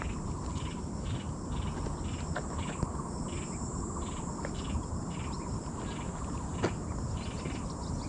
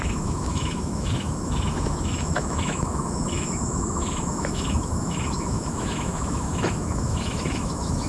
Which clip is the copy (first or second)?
second